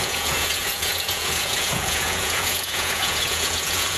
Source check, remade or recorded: remade